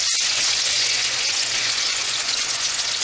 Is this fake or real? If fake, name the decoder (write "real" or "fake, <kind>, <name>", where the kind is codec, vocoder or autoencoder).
fake, vocoder, Vocos